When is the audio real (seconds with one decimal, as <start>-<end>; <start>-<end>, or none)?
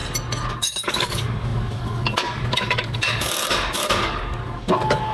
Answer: 0.0-0.5